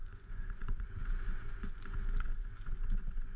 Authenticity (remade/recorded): remade